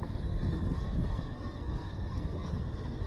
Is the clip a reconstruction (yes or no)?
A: yes